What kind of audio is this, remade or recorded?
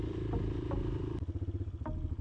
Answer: remade